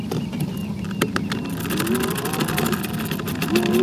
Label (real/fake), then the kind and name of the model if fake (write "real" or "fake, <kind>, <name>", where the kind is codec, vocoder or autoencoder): fake, vocoder, BigVGAN v2